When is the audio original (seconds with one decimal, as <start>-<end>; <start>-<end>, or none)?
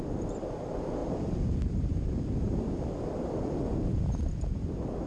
0.0-1.0; 4.0-5.1